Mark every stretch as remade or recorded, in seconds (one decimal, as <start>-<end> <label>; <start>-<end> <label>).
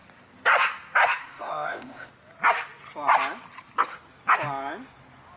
0.0-1.2 recorded; 1.2-2.1 remade; 2.1-5.4 recorded